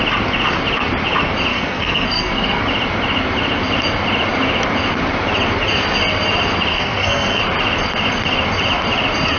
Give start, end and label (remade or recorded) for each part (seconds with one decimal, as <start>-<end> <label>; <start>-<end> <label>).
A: 0.0-1.5 recorded; 1.5-2.6 remade; 2.6-6.7 recorded; 6.7-7.4 remade; 7.4-9.4 recorded